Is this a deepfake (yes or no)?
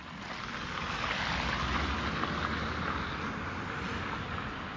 no